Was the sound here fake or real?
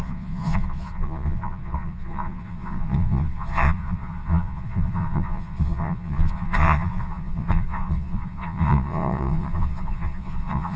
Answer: fake